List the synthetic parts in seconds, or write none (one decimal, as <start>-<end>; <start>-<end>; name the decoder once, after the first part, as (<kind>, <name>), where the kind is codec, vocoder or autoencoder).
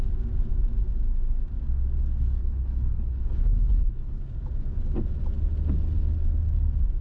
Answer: 2.4-4.2 (codec, HILCodec)